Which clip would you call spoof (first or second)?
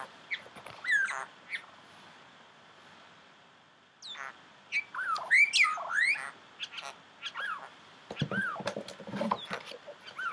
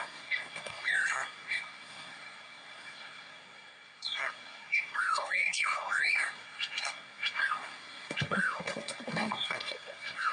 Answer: second